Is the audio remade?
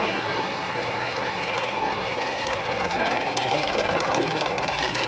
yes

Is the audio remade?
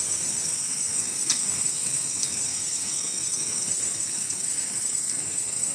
yes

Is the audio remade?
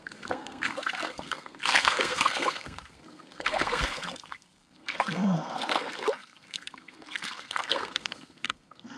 yes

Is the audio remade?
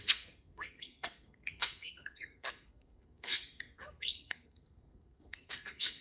yes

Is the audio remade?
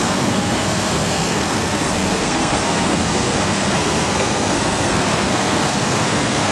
yes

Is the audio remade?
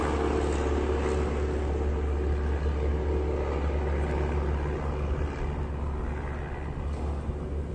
no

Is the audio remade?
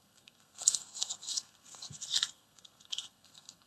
yes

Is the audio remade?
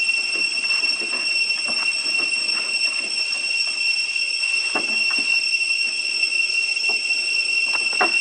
no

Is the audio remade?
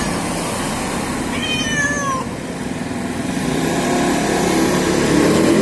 no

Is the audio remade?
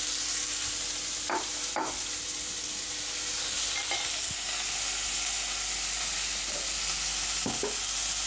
no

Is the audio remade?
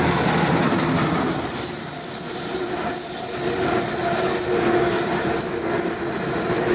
no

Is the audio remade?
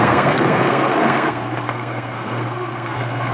yes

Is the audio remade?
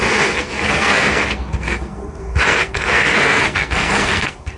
yes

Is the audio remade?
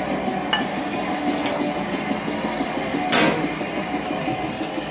no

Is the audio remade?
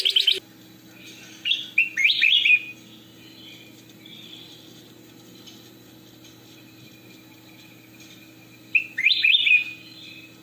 no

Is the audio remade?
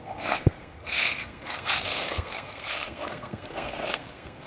yes